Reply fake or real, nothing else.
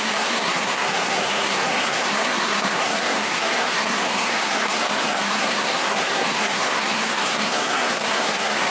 fake